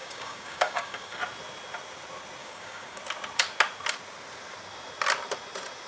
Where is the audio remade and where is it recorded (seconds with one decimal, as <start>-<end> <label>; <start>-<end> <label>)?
0.0-1.2 remade; 1.2-2.4 recorded; 2.4-3.0 remade; 3.0-5.9 recorded